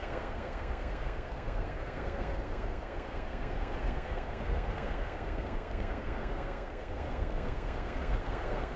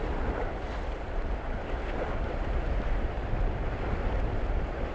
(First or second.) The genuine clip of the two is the second